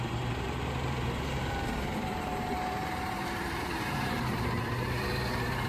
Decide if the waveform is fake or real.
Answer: fake